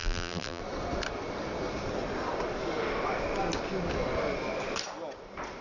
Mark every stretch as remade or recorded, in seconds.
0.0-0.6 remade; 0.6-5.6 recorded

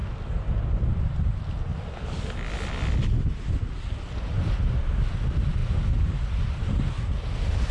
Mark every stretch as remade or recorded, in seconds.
0.0-0.7 recorded; 0.7-1.7 remade; 1.7-5.1 recorded; 5.1-7.7 remade

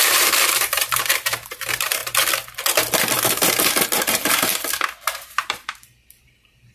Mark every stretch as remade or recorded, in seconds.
0.0-2.0 remade; 2.0-3.2 recorded; 3.2-4.5 remade; 4.5-5.0 recorded; 5.0-6.7 remade

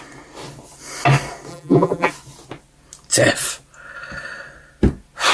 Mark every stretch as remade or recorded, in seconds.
0.0-1.5 recorded; 1.5-2.1 remade; 2.1-5.3 recorded